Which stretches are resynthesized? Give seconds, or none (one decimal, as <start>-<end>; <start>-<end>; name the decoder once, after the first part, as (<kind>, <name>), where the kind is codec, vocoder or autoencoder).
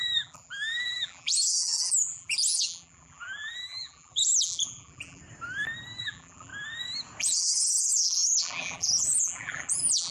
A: 0.0-5.2 (vocoder, BigVGAN v2); 6.0-6.5; 7.2-10.1